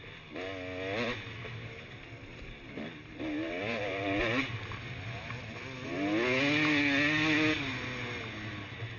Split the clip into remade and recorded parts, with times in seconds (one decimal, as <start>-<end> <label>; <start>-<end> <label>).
0.0-1.4 recorded; 1.4-5.3 remade; 5.3-9.0 recorded